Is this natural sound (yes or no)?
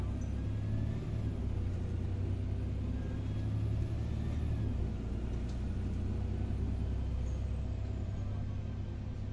yes